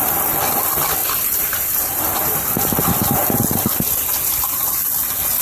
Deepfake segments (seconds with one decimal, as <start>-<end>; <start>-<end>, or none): 1.0-2.5